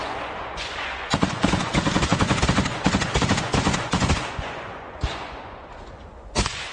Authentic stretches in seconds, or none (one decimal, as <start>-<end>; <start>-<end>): none